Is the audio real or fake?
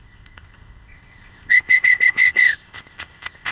fake